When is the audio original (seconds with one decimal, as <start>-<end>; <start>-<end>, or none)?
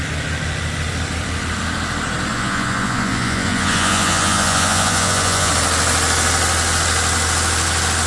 0.0-2.3; 5.5-8.1